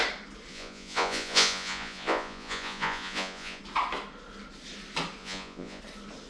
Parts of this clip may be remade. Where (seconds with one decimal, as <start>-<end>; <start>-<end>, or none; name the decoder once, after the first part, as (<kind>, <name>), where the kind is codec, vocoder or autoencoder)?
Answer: 0.5-3.6 (vocoder, Vocos); 5.2-5.8

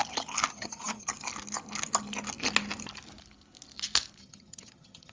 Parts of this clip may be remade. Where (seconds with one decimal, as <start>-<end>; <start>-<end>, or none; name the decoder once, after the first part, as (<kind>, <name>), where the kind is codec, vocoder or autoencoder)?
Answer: 0.5-1.1 (vocoder, HiFi-GAN); 4.2-5.1

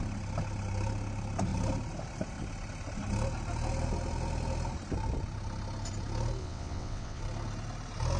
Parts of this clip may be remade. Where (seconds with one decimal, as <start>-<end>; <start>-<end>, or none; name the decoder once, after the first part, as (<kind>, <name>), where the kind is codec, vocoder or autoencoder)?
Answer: 6.4-7.2 (vocoder, WaveNeXt)

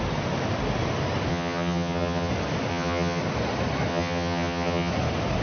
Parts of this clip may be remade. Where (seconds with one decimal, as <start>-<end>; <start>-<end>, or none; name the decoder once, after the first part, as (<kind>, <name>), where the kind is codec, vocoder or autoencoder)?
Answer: 1.3-2.3 (vocoder, HiFi-GAN); 2.7-3.2; 3.9-4.9

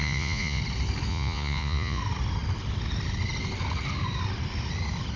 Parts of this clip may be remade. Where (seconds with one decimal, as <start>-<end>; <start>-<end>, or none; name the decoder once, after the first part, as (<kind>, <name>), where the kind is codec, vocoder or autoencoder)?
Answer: 0.0-0.6 (vocoder, Vocos); 1.1-2.0

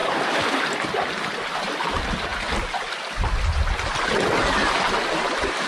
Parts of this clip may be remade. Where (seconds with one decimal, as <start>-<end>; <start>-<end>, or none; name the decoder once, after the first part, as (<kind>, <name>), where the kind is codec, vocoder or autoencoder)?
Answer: none